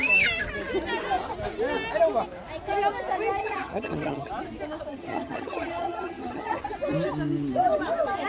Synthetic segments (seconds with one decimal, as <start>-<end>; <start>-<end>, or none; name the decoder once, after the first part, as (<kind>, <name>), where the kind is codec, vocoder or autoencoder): 3.4-4.3 (vocoder, HiFi-GAN); 4.9-6.6